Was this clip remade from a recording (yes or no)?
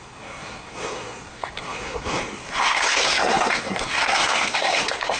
yes